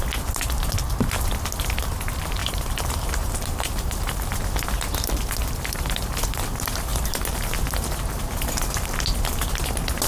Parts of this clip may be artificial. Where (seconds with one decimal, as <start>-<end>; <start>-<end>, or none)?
2.4-4.3